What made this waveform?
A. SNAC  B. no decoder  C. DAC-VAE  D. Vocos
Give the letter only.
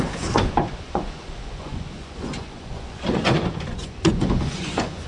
D